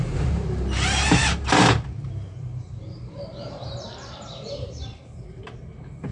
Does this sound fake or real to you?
fake